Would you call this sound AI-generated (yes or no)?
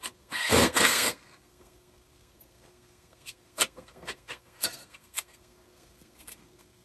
yes